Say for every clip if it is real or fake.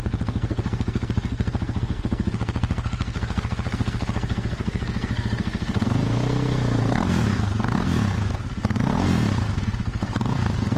fake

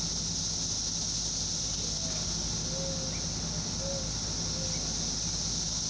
real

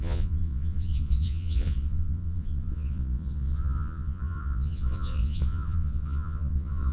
fake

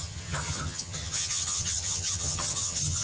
fake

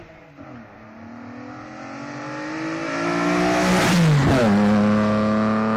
real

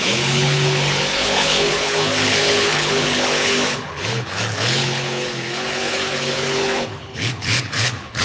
fake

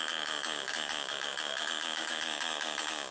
fake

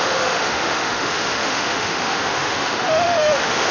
fake